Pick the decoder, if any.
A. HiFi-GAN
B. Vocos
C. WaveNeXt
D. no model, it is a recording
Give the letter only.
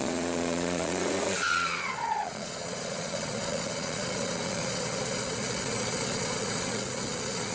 B